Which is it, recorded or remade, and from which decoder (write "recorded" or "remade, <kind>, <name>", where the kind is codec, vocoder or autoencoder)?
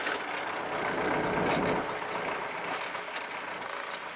recorded